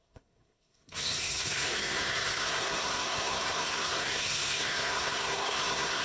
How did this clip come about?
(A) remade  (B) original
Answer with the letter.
A